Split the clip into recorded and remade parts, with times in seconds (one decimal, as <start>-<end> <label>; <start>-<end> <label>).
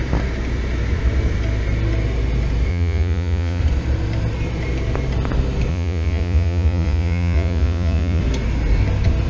0.0-2.7 recorded; 2.7-3.6 remade; 3.6-5.7 recorded; 5.7-8.2 remade; 8.2-9.3 recorded